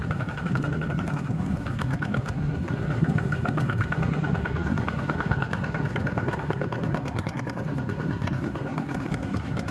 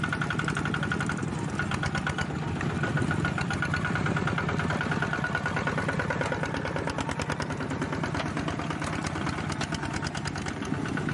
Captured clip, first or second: second